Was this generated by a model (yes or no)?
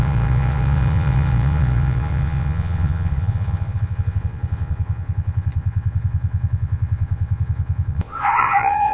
yes